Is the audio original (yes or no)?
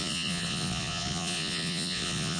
no